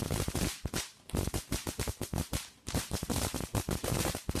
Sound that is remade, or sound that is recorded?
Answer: remade